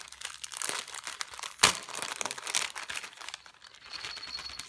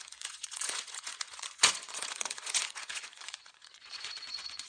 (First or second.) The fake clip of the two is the second